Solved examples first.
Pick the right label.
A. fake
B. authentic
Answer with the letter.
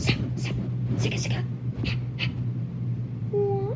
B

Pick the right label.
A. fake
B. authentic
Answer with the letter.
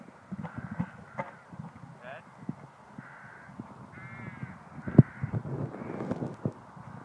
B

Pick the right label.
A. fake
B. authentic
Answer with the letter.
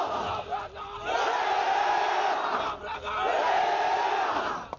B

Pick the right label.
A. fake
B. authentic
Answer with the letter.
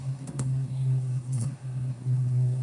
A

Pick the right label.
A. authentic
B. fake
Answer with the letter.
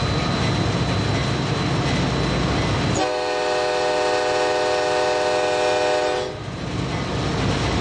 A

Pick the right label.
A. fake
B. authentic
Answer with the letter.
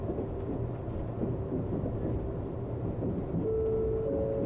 B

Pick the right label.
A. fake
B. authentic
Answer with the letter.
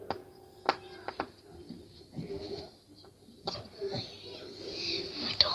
B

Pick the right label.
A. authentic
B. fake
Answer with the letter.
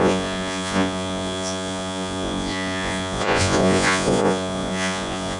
B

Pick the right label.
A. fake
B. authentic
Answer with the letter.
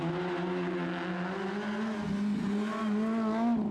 B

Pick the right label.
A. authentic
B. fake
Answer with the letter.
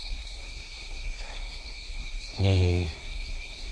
B